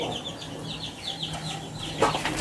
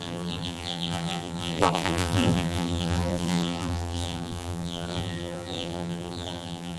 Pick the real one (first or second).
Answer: first